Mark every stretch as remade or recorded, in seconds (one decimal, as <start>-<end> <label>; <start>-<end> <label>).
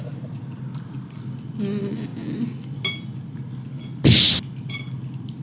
0.0-5.4 recorded